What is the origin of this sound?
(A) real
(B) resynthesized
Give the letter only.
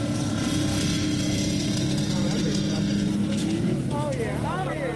A